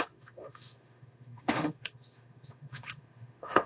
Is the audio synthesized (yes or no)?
yes